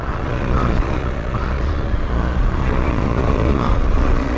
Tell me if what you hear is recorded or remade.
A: remade